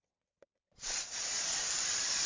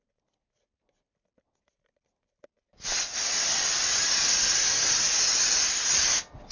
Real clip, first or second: second